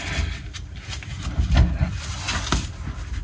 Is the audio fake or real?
real